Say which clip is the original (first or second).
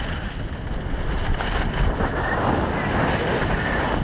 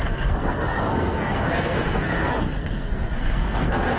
first